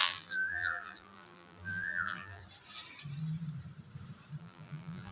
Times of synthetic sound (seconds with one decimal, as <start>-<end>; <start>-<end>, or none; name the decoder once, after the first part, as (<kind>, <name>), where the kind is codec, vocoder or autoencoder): 0.0-2.4 (vocoder, BigVGAN v2); 4.4-5.1